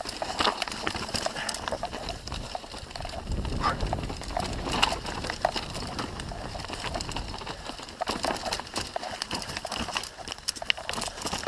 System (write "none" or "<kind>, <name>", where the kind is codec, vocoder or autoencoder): none